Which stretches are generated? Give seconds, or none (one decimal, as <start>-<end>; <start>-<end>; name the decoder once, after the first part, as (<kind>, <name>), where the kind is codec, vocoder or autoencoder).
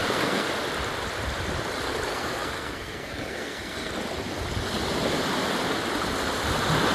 0.0-0.5 (codec, SNAC); 2.1-3.9